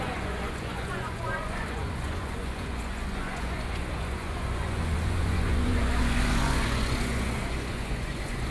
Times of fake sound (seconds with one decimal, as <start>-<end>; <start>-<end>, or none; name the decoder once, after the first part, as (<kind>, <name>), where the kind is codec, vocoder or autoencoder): 0.0-8.5 (vocoder, Vocos)